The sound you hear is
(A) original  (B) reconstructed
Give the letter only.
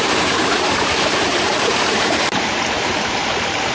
B